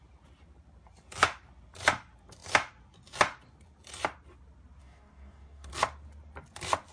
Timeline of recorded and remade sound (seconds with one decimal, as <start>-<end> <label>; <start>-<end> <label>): 0.0-4.8 recorded; 4.8-5.7 remade; 5.7-6.9 recorded